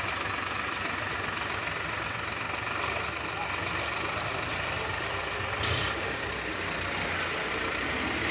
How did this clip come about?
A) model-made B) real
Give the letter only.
B